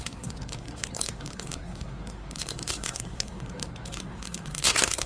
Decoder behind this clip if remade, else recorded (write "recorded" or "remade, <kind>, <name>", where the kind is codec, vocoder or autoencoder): remade, codec, SNAC